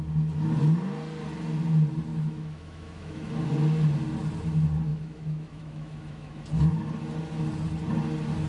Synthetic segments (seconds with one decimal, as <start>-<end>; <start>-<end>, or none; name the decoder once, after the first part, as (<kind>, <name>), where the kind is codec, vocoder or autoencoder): 2.1-3.3 (autoencoder, DAC-VAE); 4.9-6.4